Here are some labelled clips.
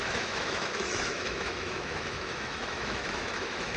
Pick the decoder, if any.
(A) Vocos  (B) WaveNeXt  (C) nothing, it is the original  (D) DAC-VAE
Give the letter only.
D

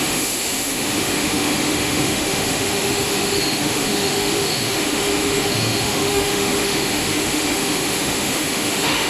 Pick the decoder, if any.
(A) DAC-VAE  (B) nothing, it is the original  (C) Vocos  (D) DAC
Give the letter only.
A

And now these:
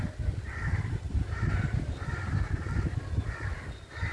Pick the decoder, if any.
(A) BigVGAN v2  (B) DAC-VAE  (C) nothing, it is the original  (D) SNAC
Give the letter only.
C